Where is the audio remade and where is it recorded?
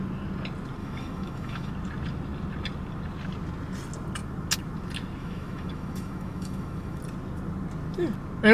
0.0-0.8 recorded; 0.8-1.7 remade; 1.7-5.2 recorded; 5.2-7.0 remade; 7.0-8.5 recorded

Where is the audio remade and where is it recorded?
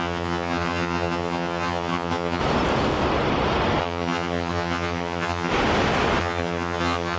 0.0-2.4 remade; 2.4-3.8 recorded; 3.8-5.5 remade; 5.5-6.2 recorded; 6.2-7.2 remade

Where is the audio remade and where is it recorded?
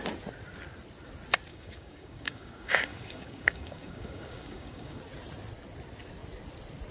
0.0-1.5 recorded; 1.5-5.0 remade; 5.0-6.9 recorded